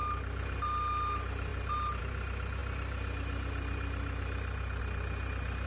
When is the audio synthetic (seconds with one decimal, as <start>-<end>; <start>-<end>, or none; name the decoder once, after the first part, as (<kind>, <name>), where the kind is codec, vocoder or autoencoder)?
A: none